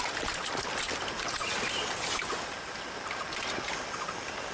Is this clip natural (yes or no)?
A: yes